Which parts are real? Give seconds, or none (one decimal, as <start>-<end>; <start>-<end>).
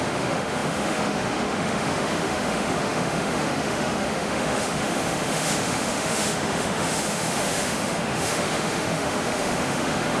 none